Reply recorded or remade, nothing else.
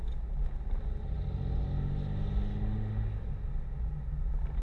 recorded